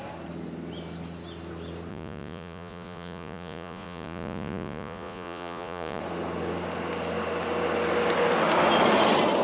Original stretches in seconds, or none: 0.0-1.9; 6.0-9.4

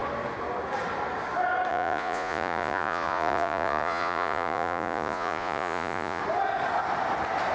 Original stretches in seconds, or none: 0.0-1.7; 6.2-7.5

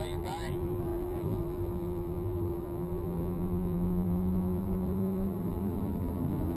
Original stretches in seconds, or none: none

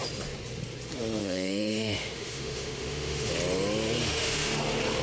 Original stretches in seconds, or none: 0.0-1.2; 3.3-4.0; 4.6-5.0

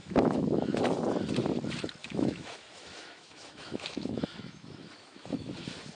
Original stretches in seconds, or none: 0.8-2.0; 5.5-5.9